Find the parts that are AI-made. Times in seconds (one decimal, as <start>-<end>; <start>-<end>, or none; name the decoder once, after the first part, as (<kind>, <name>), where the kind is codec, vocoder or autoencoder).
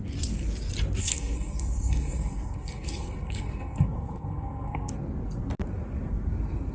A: 1.0-4.9 (codec, SNAC)